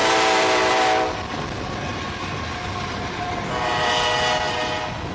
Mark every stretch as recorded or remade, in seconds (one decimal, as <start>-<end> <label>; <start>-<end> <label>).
0.0-3.1 remade; 3.1-5.1 recorded